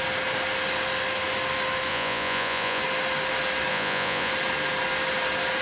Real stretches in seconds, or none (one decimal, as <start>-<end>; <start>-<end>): 0.0-1.9; 2.8-3.7; 4.3-5.6